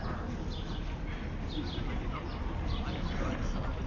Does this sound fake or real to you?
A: real